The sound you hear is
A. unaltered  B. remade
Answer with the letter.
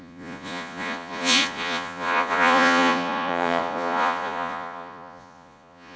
B